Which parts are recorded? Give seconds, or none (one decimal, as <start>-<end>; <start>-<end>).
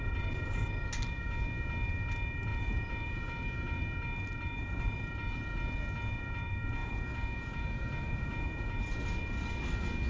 0.0-2.5; 3.8-6.8; 8.8-10.1